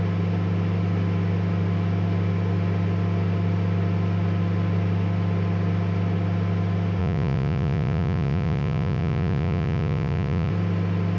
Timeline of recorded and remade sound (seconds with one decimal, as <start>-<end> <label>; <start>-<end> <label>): 0.0-7.0 recorded; 7.0-10.5 remade; 10.5-11.2 recorded

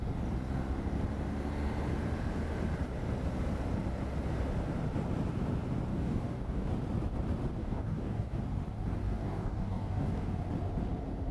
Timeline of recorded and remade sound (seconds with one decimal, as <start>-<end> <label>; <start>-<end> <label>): 0.0-5.9 recorded; 5.9-6.7 remade; 6.7-7.6 recorded; 7.6-8.4 remade; 8.4-9.0 recorded; 9.0-10.3 remade; 10.3-11.3 recorded

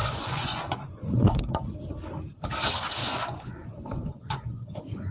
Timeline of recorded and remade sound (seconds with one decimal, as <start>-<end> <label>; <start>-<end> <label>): 0.0-1.4 remade; 1.4-3.0 recorded; 3.0-5.1 remade

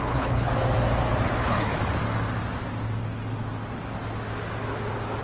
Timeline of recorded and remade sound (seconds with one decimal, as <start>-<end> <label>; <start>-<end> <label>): 0.0-0.5 remade; 0.5-1.4 recorded; 1.4-1.8 remade; 1.8-5.2 recorded

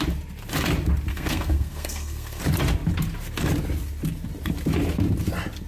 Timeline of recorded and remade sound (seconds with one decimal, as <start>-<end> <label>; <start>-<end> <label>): 0.0-1.1 recorded; 1.1-2.4 remade; 2.4-5.7 recorded

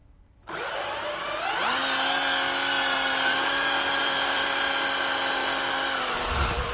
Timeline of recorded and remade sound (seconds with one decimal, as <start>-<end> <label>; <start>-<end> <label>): 0.0-1.1 remade; 1.1-4.0 recorded; 4.0-4.7 remade; 4.7-6.7 recorded

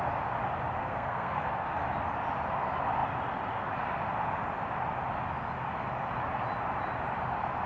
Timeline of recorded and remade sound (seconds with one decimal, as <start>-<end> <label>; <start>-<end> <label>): 0.0-0.8 recorded; 0.8-1.8 remade; 1.8-7.7 recorded